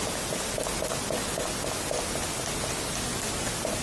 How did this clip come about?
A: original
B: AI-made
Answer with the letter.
A